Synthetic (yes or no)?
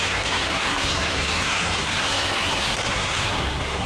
yes